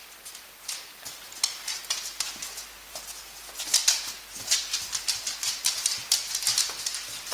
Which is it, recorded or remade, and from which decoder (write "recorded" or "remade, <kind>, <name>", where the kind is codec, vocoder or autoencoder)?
recorded